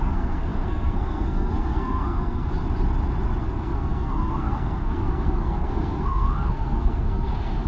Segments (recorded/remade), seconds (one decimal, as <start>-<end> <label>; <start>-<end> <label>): 0.0-2.5 remade; 2.5-3.4 recorded; 3.4-7.7 remade

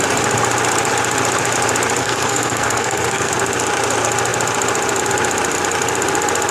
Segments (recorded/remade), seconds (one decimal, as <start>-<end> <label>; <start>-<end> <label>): 0.0-2.0 recorded; 2.0-3.3 remade; 3.3-6.5 recorded